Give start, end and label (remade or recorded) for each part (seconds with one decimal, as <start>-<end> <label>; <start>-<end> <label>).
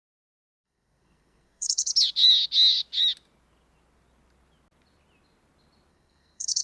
0.0-1.9 remade; 1.9-5.9 recorded; 5.9-6.6 remade